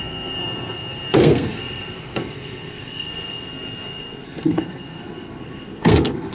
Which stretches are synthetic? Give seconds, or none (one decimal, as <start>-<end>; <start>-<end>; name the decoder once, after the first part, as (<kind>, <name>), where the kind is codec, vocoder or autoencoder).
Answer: 0.0-6.3 (codec, SNAC)

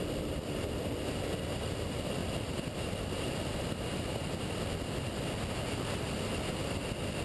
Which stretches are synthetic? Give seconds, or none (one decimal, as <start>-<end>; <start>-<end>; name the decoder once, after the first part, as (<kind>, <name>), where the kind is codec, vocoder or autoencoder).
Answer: none

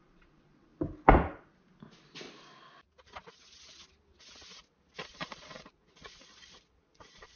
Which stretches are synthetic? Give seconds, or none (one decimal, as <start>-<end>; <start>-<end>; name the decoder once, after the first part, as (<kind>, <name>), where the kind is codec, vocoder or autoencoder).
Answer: 0.0-0.7 (vocoder, Vocos); 5.1-7.4

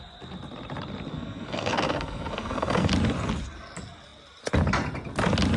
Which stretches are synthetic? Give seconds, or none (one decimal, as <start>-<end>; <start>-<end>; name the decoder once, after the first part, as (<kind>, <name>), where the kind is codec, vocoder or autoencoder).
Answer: 1.1-2.9 (codec, SNAC)